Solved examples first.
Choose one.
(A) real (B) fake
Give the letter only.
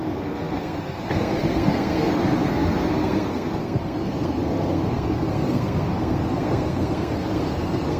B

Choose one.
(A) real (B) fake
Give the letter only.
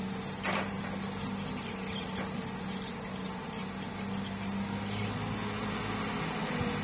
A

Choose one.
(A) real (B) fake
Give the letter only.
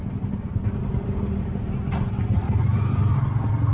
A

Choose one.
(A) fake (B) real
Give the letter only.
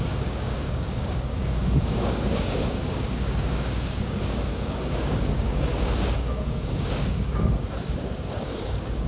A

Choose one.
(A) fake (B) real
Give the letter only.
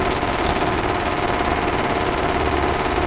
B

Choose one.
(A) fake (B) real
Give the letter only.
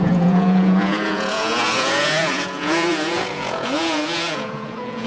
A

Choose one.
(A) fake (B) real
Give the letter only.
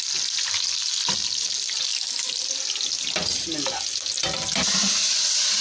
B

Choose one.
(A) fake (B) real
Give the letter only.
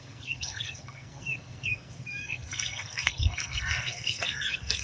A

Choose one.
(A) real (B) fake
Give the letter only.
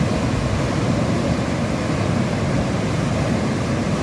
A